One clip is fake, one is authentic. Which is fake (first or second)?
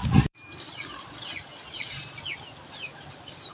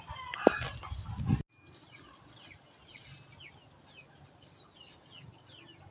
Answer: first